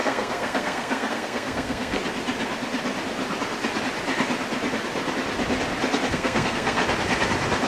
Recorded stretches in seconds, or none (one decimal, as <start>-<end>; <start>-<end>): 2.0-6.1; 6.8-7.7